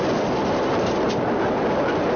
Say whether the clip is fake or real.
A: real